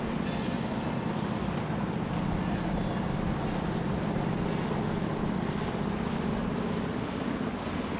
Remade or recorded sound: recorded